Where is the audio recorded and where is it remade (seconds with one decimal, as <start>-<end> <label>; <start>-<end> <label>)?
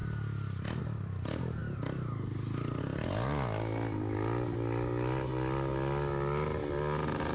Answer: 0.0-7.3 recorded